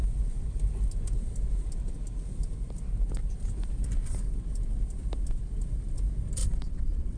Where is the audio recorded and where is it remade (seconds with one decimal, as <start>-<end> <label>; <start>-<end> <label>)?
0.0-6.4 recorded; 6.4-7.2 remade